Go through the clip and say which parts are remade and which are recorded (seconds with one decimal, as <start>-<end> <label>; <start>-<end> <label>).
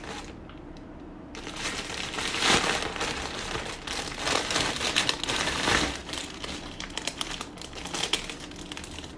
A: 0.0-6.0 recorded; 6.0-7.3 remade; 7.3-9.2 recorded